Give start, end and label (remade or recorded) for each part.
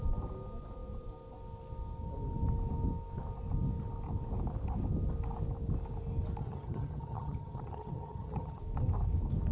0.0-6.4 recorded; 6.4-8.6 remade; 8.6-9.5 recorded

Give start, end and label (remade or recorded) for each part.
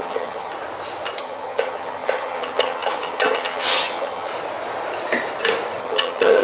0.0-0.5 remade; 0.5-1.2 recorded; 1.2-4.3 remade; 4.3-5.8 recorded; 5.8-6.4 remade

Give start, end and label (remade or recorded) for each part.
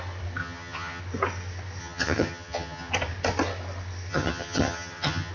0.0-0.4 recorded; 0.4-1.0 remade; 1.0-1.8 recorded; 1.8-2.9 remade; 2.9-4.1 recorded; 4.1-5.3 remade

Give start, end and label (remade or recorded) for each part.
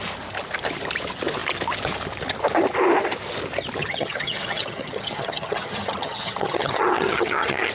0.0-3.8 recorded; 3.8-7.7 remade